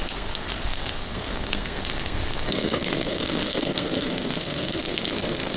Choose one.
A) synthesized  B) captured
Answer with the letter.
A